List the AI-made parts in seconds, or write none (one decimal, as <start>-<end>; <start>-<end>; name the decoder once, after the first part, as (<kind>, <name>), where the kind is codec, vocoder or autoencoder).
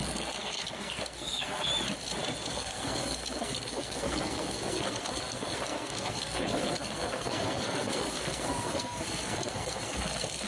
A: 0.0-1.7 (codec, SNAC); 2.5-10.5